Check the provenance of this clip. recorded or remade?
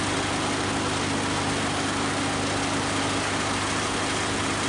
recorded